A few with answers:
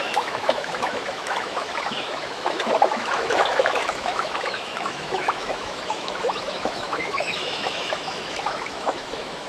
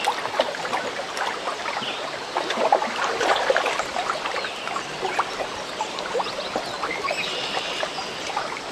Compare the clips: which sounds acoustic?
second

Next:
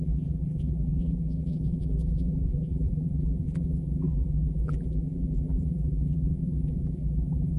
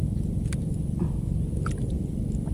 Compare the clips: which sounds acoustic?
second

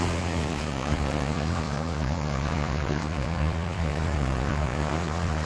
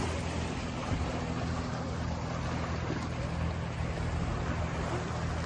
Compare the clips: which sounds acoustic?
second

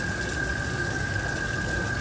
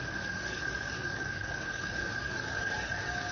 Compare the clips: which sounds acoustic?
first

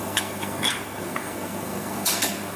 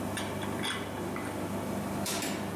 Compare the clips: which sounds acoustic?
second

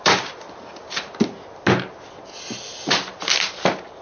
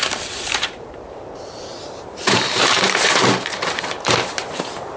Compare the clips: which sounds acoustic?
first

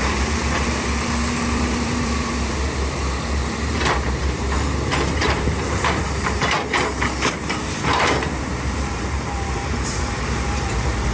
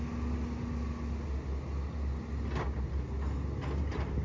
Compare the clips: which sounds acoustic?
second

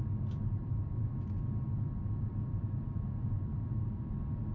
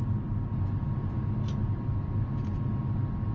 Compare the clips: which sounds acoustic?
second